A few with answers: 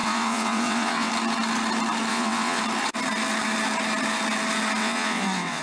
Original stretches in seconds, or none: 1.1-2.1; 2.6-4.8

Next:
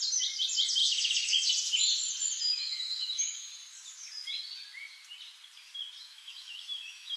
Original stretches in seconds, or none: 0.0-0.8; 1.5-2.5; 3.5-6.0